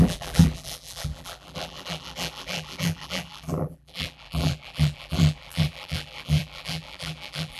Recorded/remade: remade